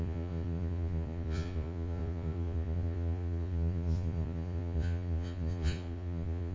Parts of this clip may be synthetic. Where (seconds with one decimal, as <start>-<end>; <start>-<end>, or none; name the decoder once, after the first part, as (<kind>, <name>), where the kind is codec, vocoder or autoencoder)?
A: 0.0-6.5 (vocoder, Vocos)